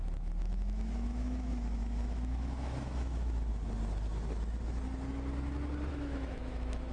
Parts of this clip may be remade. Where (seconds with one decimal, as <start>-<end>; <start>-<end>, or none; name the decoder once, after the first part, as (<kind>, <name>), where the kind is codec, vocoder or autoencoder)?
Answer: 0.0-3.5 (autoencoder, DAC-VAE); 5.9-6.9